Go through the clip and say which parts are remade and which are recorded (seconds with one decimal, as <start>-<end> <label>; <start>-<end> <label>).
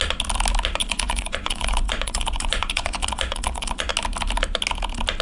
0.0-0.8 recorded; 0.8-3.9 remade; 3.9-5.2 recorded